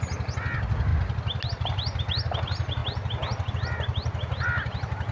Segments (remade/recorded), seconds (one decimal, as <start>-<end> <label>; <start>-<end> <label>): 0.0-5.1 recorded